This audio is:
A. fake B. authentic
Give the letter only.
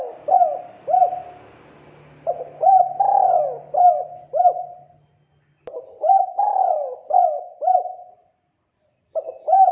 A